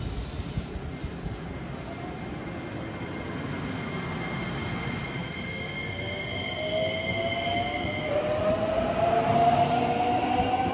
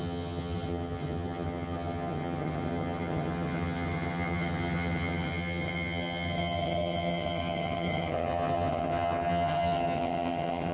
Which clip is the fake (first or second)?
second